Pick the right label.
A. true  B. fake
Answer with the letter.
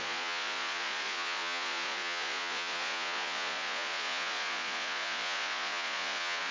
B